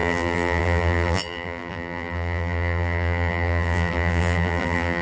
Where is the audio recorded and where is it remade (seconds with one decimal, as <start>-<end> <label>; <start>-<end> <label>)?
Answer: 0.0-5.0 remade